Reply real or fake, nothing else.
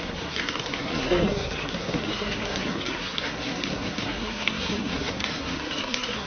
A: fake